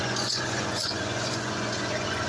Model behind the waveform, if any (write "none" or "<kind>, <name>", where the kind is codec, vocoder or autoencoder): vocoder, Vocos